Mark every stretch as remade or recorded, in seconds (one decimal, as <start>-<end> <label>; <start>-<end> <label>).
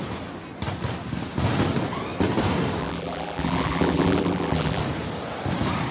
0.0-2.8 recorded; 2.8-4.8 remade; 4.8-5.9 recorded